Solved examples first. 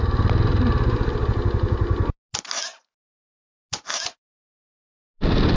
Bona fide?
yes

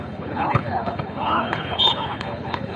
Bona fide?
no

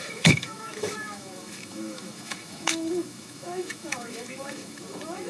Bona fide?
no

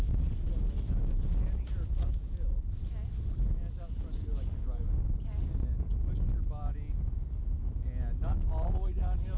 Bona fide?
yes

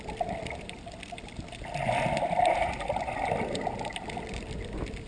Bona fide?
yes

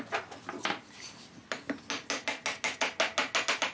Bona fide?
yes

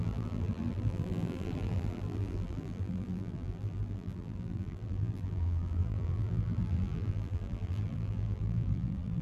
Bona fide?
no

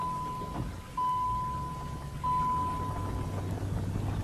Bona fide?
yes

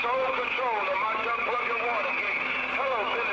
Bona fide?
yes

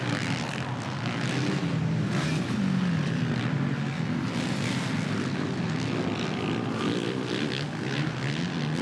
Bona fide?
yes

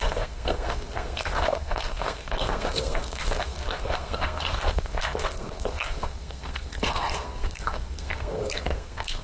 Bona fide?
no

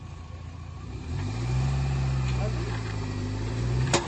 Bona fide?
no